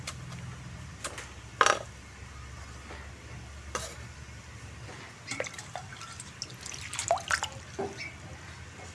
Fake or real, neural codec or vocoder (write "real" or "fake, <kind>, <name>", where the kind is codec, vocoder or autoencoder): real